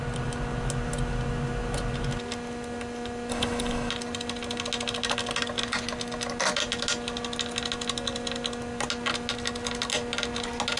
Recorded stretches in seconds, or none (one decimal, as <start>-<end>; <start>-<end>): 0.0-3.3; 3.9-10.8